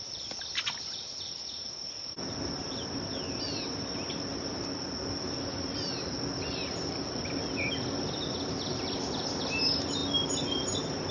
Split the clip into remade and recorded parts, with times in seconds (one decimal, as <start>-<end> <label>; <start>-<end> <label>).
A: 0.0-11.1 recorded